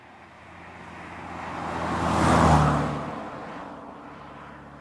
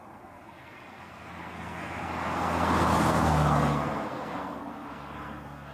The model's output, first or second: second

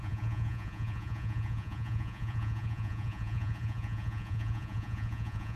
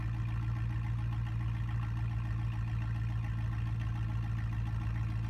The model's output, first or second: first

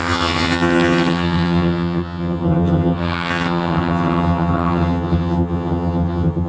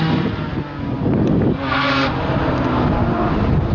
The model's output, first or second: first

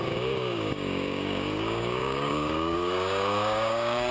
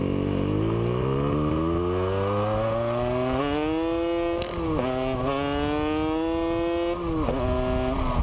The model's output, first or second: first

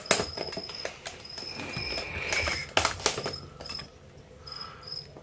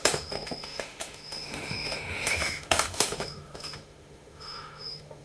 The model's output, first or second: second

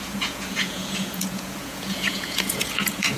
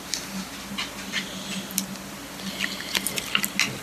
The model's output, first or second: first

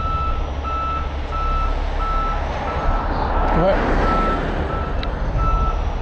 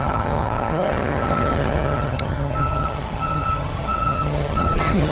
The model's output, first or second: second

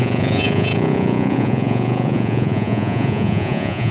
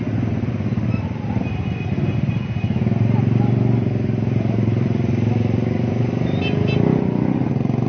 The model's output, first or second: first